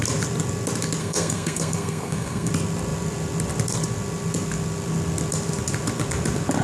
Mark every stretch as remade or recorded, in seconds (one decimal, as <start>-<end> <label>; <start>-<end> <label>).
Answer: 0.0-1.0 recorded; 1.0-2.5 remade; 2.5-6.6 recorded